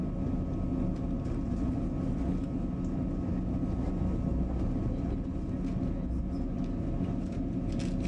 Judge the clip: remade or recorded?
recorded